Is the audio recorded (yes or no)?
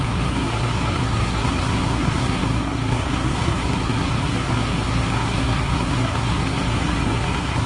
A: no